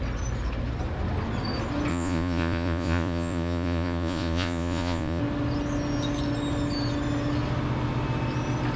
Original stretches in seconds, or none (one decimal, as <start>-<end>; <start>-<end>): 0.0-1.9; 5.2-8.8